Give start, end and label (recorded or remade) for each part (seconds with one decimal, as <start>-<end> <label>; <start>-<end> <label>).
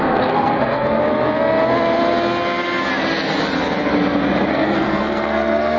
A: 0.0-1.0 remade; 1.0-4.5 recorded; 4.5-5.8 remade